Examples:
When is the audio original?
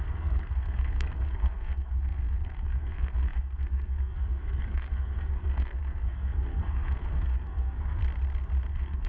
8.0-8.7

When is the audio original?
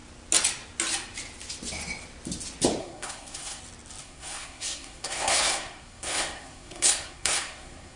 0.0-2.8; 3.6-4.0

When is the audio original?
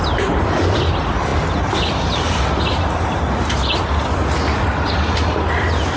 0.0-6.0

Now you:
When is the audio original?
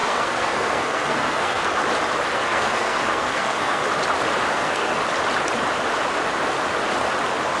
1.8-2.3; 3.8-4.5; 5.0-7.6